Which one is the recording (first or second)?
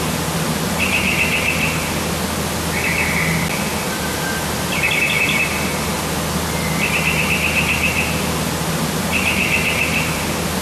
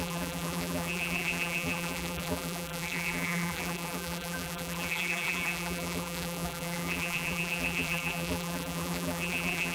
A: first